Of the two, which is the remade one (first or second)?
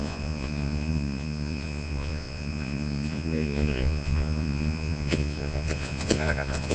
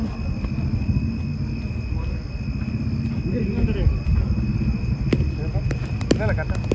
first